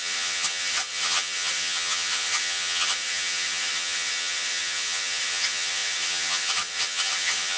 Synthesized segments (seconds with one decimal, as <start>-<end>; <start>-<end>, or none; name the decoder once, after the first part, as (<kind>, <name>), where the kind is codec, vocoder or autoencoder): 0.0-7.6 (vocoder, HiFi-GAN)